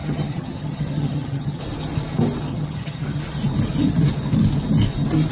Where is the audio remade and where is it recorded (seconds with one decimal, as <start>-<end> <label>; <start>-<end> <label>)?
0.0-1.6 remade; 1.6-2.5 recorded; 2.5-3.2 remade; 3.2-5.3 recorded